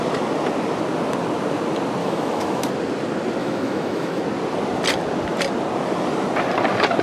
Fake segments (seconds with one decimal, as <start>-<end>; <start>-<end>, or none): 2.0-2.7; 3.4-4.2